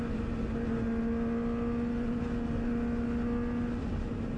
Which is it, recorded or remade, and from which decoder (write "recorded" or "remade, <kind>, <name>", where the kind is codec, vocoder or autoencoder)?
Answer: recorded